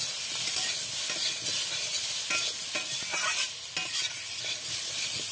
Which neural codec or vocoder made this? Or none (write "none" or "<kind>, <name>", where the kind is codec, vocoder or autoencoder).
none